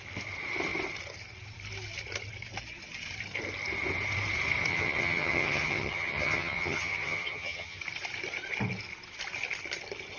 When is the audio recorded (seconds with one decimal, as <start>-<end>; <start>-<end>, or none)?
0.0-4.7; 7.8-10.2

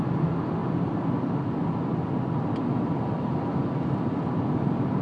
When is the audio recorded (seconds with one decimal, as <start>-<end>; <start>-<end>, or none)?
0.0-5.0

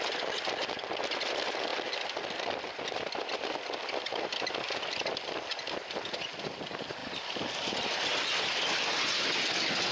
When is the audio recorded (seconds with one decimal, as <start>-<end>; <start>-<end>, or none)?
0.0-1.7; 6.4-7.0; 8.1-9.9

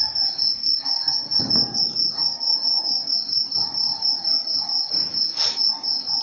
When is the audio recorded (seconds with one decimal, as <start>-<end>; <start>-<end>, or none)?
0.0-0.6; 1.4-2.2; 3.1-6.2